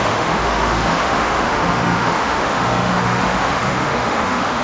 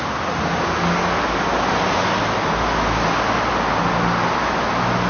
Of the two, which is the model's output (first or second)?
first